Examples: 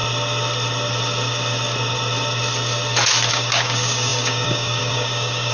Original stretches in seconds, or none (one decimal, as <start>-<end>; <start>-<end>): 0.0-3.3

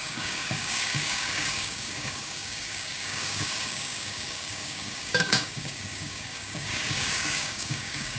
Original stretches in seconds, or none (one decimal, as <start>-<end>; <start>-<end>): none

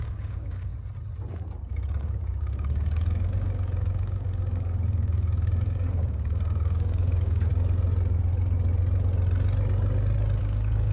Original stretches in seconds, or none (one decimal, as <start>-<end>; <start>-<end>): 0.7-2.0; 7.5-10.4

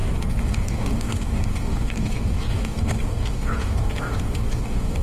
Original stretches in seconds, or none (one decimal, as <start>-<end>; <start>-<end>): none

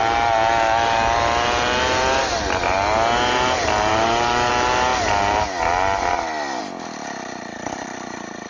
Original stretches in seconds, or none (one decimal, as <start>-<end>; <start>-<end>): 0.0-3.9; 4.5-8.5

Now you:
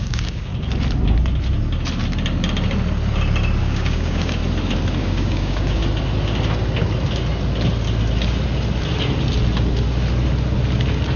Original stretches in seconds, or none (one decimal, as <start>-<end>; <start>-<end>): 0.5-3.6; 4.4-5.0; 5.8-11.2